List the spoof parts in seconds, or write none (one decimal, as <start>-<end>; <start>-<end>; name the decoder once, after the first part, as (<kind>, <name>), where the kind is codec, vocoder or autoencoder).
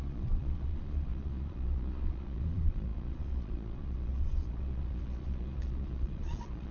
0.0-6.7 (vocoder, Vocos)